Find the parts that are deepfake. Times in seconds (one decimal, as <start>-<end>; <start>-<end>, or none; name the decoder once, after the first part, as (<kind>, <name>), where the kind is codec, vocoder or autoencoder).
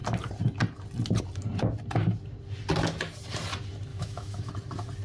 3.9-4.5 (autoencoder, DAC-VAE)